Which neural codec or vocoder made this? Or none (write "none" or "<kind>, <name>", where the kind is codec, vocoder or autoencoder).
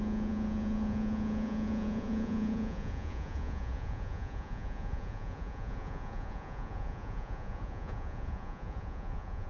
vocoder, Vocos